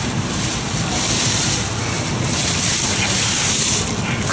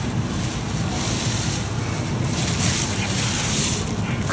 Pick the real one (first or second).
second